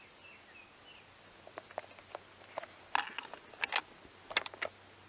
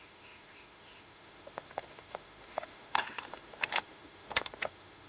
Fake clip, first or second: second